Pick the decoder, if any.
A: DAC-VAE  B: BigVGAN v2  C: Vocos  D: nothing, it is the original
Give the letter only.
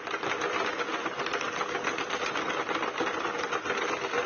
D